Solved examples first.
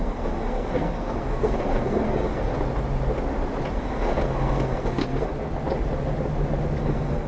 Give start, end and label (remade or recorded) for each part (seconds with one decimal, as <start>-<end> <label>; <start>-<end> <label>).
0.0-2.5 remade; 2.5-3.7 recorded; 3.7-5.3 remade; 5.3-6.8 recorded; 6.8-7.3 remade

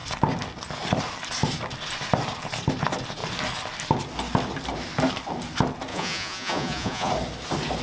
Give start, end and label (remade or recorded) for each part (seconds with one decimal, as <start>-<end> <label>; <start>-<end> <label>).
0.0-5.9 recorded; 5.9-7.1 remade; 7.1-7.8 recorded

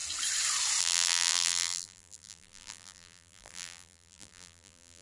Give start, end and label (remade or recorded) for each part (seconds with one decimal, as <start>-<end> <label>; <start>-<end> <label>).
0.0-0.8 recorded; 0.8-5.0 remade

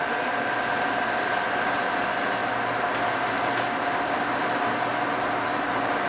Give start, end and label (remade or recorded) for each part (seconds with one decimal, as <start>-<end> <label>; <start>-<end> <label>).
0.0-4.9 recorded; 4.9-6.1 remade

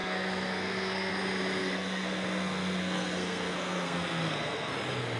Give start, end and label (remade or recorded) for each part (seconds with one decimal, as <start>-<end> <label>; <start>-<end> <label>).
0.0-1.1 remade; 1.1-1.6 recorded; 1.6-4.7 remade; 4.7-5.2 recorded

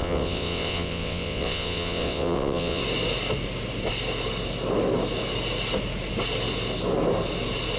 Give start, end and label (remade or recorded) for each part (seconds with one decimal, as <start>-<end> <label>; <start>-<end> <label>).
0.0-2.8 remade; 2.8-7.8 recorded

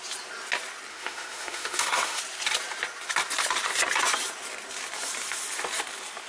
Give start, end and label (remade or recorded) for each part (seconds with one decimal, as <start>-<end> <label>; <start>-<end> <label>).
0.0-0.9 recorded; 0.9-2.2 remade; 2.2-6.3 recorded

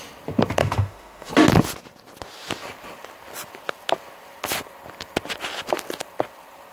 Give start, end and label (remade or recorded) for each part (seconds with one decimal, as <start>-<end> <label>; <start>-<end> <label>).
0.0-0.6 recorded; 0.6-1.3 remade; 1.3-6.7 recorded